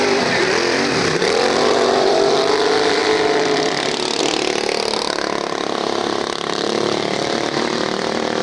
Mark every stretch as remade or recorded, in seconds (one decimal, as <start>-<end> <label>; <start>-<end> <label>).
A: 0.0-8.4 remade